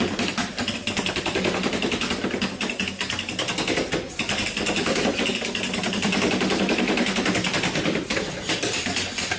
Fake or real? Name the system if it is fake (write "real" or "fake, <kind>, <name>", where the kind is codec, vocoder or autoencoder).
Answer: real